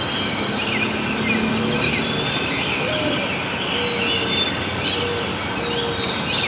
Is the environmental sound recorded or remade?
recorded